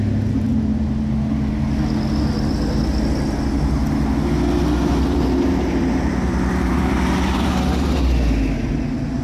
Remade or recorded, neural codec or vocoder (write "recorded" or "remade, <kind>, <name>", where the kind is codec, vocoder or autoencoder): recorded